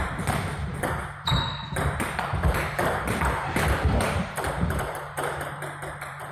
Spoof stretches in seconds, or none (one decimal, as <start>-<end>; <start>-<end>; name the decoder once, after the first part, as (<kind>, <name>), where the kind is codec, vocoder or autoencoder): 2.5-6.3 (vocoder, BigVGAN v2)